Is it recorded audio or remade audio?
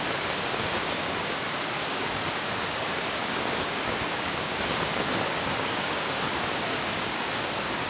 remade